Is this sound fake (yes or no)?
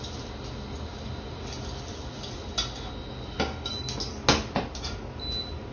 no